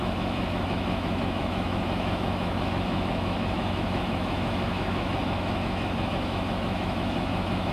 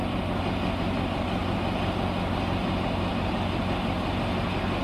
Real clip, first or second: second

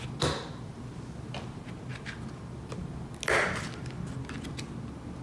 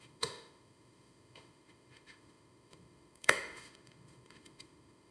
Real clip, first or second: first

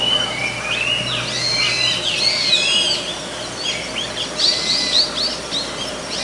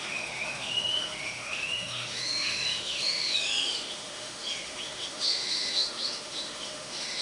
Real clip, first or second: first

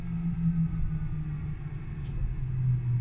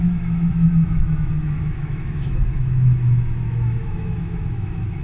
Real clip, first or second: first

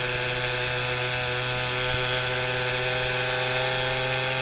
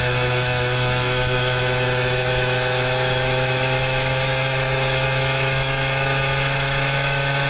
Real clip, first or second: first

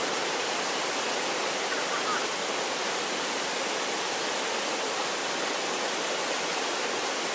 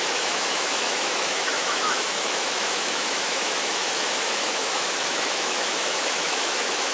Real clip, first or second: first